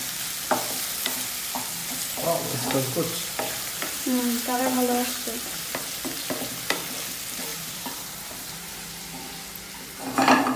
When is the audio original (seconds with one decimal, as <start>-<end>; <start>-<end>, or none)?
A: 0.0-1.8; 4.6-7.5; 8.7-10.6